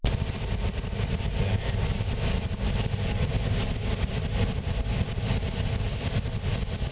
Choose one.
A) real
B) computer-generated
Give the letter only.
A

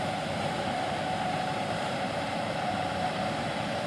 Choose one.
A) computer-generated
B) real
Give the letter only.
A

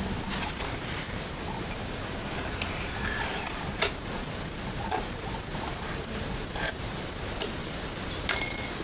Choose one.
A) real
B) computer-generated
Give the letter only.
B